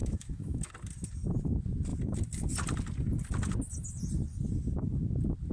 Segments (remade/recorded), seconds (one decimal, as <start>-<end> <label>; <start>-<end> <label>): 0.0-0.7 remade; 0.7-5.5 recorded